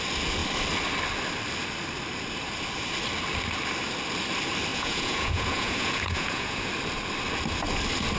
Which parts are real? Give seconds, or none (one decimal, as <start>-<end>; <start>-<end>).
0.0-4.7; 6.7-8.2